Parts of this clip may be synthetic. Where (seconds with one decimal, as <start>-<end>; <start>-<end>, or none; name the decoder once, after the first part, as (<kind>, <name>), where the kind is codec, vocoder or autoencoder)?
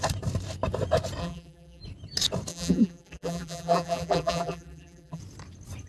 1.2-1.8 (vocoder, BigVGAN v2); 2.5-5.2